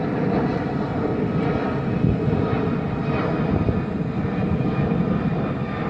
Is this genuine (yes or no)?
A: yes